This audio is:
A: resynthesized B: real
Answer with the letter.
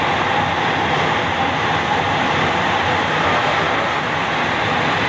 B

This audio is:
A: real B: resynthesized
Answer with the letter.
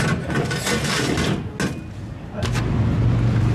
A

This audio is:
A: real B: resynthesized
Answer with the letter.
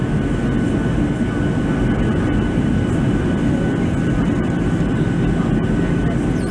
A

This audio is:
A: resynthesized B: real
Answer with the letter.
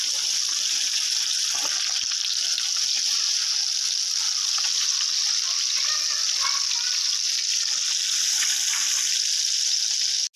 B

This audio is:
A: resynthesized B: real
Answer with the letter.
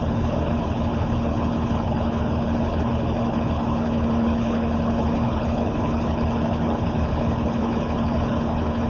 A